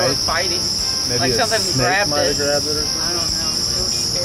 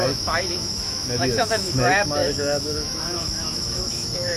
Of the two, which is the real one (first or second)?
first